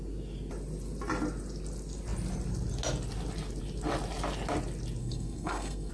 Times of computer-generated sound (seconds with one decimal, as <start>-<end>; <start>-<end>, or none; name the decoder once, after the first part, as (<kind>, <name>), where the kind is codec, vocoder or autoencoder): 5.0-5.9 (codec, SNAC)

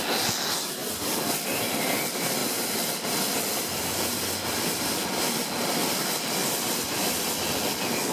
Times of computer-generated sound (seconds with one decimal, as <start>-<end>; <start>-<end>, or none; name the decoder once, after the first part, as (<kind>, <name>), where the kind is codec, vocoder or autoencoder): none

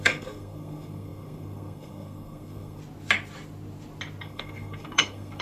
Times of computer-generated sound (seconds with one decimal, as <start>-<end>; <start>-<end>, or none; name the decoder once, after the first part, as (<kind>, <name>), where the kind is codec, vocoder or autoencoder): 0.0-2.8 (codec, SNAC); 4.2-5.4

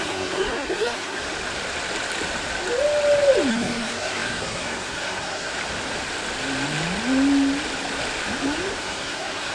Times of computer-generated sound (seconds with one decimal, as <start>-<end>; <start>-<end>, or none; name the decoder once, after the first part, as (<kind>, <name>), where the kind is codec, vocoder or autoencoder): 0.0-1.2 (codec, SNAC); 3.5-5.5; 8.8-9.5

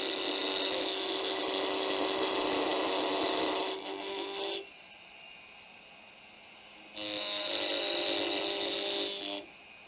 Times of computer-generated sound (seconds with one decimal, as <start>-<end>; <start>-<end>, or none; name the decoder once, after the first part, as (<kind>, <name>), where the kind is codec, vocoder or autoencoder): none